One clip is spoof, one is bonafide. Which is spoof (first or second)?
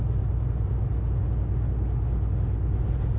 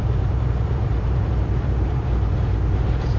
second